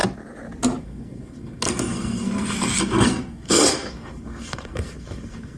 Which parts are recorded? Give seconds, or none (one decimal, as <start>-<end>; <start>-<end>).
0.0-0.8